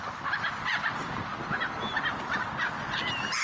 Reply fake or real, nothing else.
real